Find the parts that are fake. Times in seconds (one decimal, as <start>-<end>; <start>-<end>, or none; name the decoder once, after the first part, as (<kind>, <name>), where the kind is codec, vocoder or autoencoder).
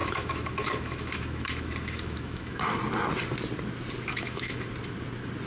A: 0.0-2.8 (autoencoder, DAC-VAE); 4.1-4.7